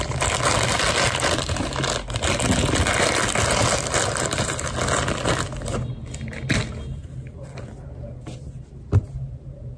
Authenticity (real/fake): real